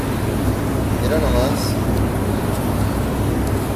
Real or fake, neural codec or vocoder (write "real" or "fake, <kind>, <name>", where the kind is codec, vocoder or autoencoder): real